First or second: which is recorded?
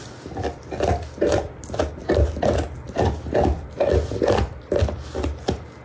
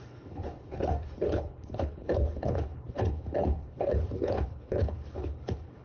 first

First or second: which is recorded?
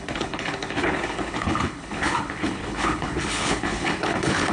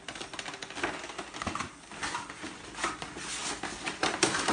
second